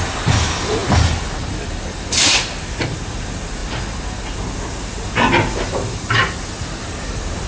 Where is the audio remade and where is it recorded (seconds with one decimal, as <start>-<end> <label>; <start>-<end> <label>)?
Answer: 0.0-7.5 recorded